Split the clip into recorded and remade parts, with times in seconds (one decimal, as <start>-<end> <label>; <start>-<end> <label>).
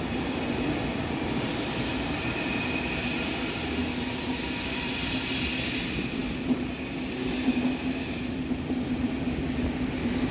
0.0-10.3 recorded